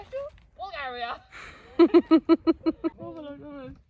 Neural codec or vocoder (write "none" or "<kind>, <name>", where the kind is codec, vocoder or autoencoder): none